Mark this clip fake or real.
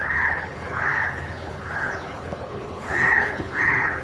fake